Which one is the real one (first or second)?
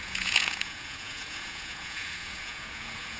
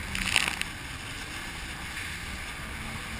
second